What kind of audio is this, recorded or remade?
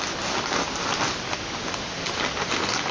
recorded